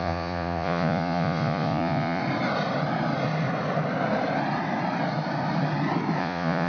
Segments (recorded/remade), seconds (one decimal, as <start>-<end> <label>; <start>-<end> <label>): 0.0-2.2 remade; 2.2-6.2 recorded; 6.2-6.7 remade